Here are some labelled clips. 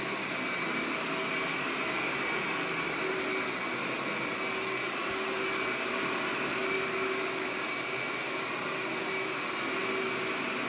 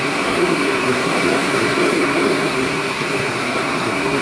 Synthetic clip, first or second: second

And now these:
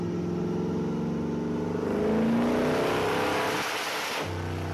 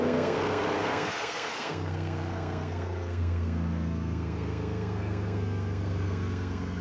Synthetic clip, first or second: second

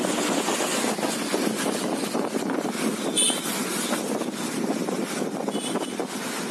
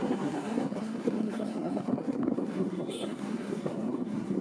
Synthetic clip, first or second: second